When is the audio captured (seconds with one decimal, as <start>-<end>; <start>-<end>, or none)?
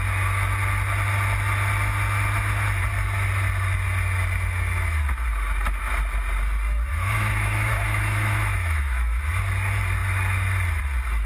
0.0-6.9; 9.2-11.3